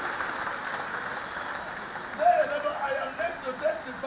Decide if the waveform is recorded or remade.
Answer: recorded